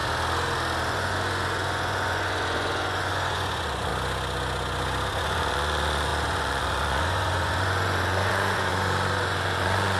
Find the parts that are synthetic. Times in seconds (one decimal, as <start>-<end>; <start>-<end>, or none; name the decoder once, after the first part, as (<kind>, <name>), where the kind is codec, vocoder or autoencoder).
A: 0.9-3.9 (vocoder, Vocos); 5.2-10.0